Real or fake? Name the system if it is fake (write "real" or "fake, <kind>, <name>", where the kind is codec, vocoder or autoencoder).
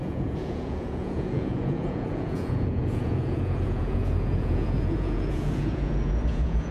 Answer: fake, vocoder, Vocos